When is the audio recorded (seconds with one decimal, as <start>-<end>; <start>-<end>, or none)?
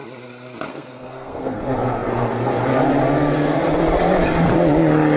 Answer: 0.0-0.7; 1.6-5.2